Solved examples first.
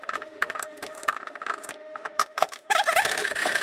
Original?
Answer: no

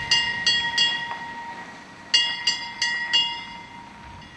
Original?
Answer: yes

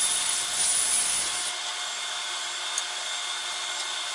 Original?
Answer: yes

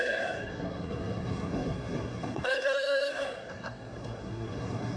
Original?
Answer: no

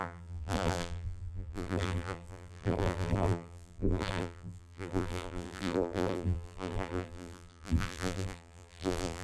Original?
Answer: no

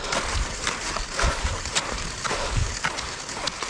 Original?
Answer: yes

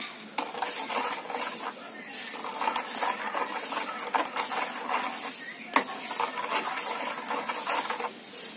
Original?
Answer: yes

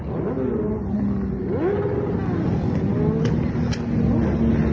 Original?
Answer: yes